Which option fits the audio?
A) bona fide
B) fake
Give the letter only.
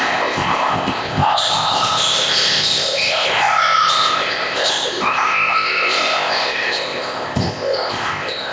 B